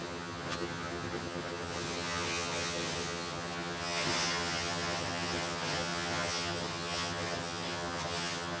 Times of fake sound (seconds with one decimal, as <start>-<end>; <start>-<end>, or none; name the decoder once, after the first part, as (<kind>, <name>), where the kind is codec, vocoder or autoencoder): 0.0-8.6 (vocoder, HiFi-GAN)